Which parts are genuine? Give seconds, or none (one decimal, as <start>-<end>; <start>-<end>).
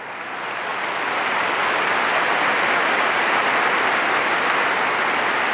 0.0-5.5